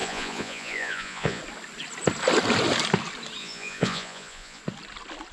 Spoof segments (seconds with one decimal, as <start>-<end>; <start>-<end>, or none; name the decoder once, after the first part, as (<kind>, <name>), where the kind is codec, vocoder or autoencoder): 0.0-1.4 (vocoder, Vocos); 3.4-4.6